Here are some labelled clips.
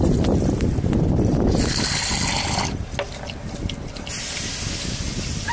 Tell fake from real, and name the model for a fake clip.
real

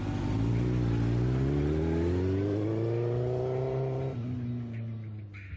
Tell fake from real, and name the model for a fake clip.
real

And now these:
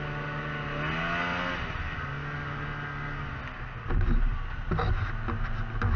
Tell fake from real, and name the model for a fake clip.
real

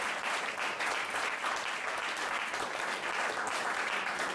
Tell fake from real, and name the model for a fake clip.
real